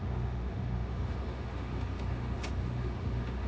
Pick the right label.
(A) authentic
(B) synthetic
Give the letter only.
B